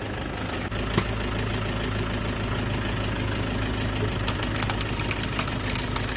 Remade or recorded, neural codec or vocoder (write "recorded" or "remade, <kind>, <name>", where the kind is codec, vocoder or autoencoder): recorded